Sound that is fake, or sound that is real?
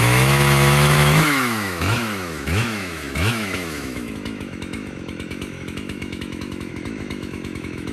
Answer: fake